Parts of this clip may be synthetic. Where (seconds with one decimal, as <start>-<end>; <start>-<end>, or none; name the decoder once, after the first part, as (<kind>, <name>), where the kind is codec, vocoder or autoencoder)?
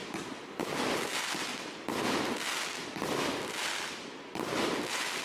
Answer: 0.0-0.6 (vocoder, BigVGAN v2)